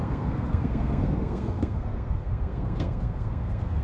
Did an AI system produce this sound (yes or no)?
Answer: yes